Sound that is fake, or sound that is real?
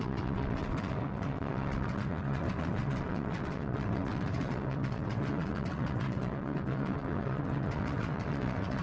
fake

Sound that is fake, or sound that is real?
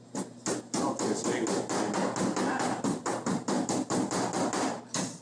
real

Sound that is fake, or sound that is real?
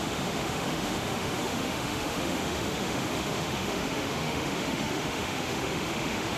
fake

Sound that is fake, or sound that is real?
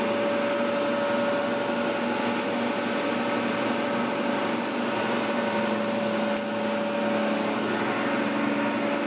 real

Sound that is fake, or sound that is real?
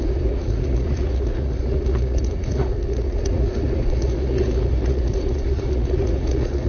fake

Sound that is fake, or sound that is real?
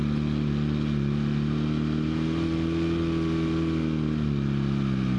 real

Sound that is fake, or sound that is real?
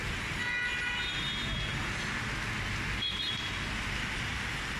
real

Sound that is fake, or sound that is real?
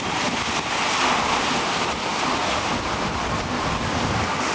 real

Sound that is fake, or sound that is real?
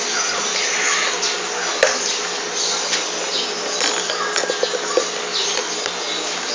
real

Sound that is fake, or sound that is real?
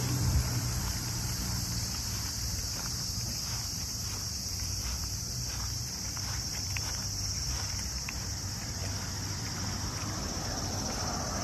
fake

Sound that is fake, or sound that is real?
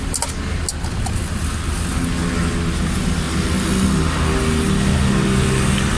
real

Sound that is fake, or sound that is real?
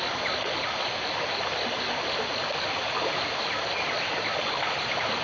real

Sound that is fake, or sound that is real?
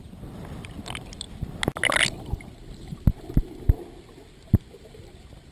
real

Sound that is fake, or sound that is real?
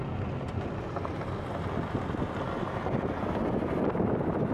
real